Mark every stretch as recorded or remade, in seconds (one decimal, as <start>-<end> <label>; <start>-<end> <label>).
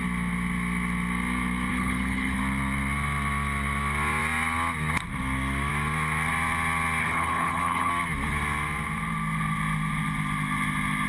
0.0-1.7 recorded; 1.7-2.4 remade; 2.4-7.0 recorded; 7.0-7.9 remade; 7.9-11.1 recorded